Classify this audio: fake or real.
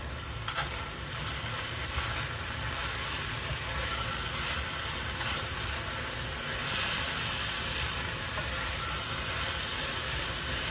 real